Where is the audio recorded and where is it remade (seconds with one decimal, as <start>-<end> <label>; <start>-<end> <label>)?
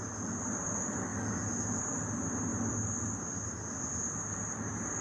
0.0-1.1 remade; 1.1-1.8 recorded; 1.8-5.0 remade